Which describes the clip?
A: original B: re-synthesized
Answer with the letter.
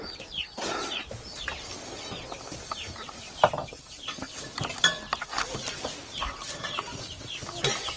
B